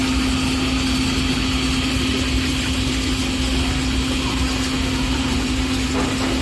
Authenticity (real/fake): real